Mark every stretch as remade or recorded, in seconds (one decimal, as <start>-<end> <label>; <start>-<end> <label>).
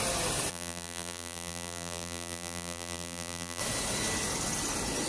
0.0-0.5 recorded; 0.5-3.6 remade; 3.6-5.1 recorded